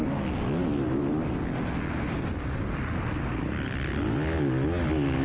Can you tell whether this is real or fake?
real